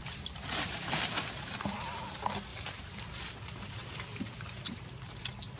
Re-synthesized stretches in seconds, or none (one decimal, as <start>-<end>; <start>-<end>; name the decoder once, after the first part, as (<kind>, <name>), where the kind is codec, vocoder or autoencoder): 0.0-1.2 (vocoder, BigVGAN v2); 2.5-5.0